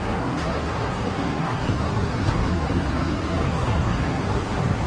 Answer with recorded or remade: remade